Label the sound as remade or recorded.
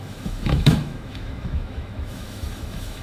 remade